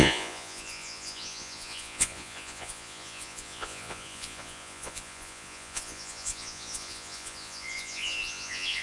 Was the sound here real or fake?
fake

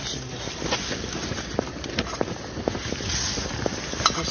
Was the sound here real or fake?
real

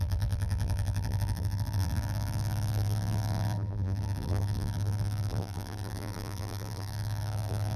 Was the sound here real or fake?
fake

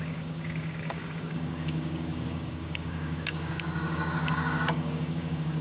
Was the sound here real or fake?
fake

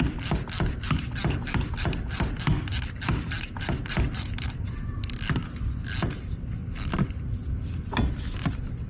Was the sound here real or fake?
real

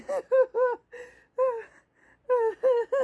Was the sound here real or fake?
real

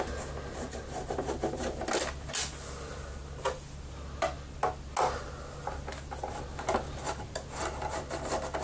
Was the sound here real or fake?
real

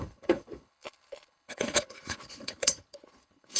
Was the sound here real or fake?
fake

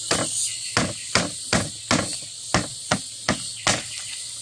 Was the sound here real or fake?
real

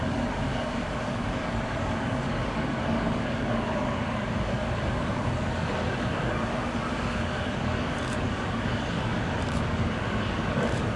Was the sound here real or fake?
fake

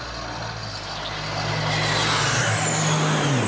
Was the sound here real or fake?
real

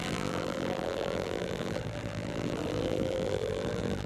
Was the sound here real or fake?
fake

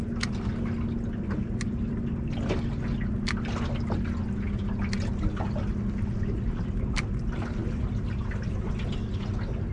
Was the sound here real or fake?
real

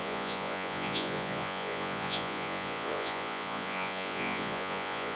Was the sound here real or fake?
fake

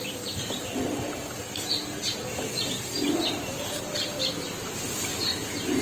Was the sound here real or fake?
real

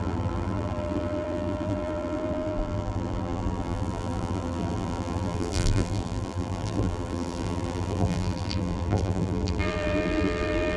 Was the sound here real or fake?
fake